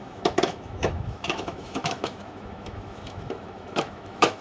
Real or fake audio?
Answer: fake